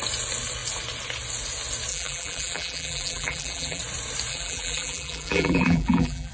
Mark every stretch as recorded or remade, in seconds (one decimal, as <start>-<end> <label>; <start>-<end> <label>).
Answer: 0.0-1.9 recorded; 1.9-3.8 remade; 3.8-4.3 recorded; 4.3-6.3 remade